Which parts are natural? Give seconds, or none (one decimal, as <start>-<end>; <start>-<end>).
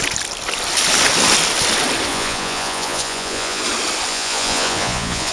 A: 0.0-2.1; 3.6-4.1